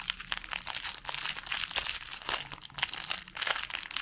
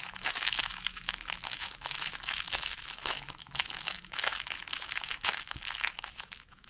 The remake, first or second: second